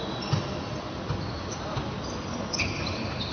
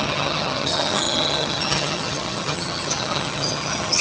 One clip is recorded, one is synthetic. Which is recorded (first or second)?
first